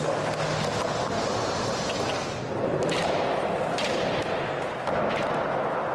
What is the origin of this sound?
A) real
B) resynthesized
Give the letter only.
A